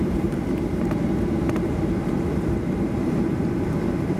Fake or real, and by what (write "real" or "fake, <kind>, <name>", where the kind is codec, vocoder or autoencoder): fake, vocoder, BigVGAN v2